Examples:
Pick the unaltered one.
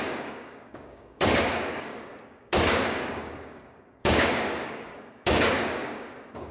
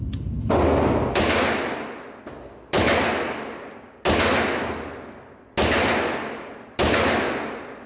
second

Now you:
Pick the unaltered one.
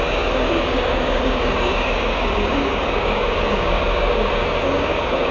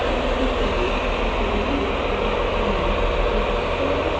second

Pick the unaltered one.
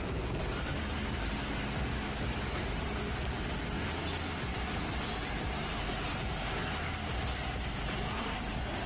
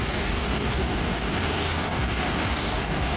first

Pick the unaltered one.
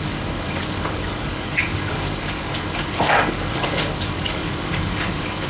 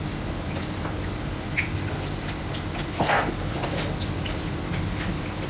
second